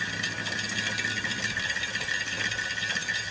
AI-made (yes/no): no